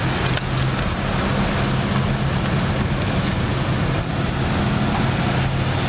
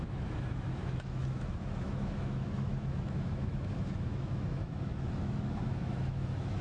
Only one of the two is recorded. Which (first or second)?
first